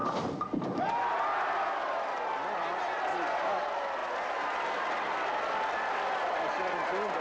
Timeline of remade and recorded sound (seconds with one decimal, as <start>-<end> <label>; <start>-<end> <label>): 0.0-7.2 recorded